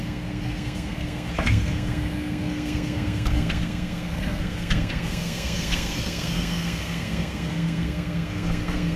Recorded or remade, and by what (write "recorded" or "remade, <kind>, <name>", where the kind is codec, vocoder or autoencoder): remade, codec, SNAC